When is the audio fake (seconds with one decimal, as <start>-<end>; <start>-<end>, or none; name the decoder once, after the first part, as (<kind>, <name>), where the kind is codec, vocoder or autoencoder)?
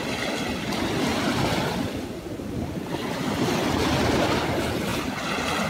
1.1-2.3 (vocoder, BigVGAN v2)